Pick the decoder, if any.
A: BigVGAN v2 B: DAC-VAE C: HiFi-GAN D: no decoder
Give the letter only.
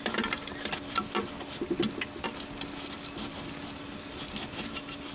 D